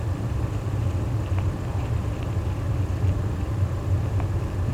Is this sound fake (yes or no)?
no